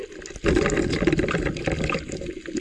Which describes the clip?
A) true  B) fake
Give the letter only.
A